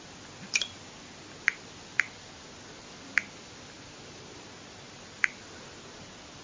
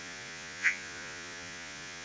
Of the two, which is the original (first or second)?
first